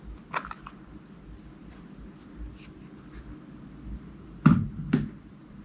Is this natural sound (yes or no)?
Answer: yes